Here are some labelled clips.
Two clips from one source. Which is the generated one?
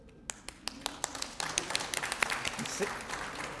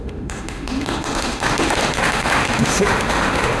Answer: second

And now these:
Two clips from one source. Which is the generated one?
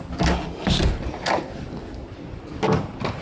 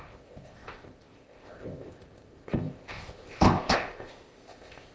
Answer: second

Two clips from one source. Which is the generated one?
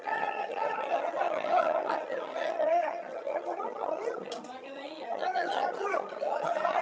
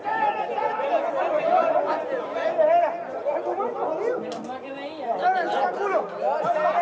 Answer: first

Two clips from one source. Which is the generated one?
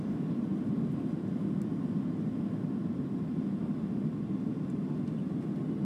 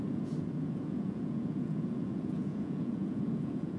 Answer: second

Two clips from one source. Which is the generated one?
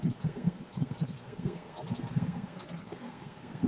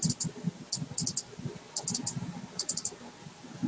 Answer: first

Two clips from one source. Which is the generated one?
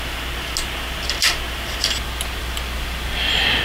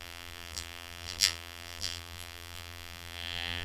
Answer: second